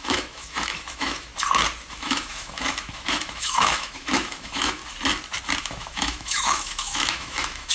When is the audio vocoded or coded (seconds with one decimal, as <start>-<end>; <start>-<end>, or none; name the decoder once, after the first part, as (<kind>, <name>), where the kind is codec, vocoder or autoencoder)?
0.0-1.3 (autoencoder, DAC-VAE); 1.9-4.8; 5.6-7.7